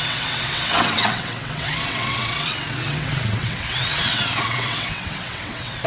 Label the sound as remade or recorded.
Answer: remade